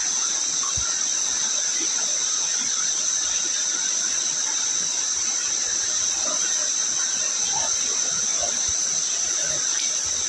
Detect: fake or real fake